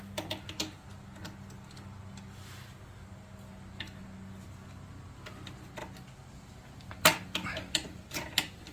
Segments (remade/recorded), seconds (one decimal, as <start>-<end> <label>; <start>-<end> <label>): 0.0-8.7 recorded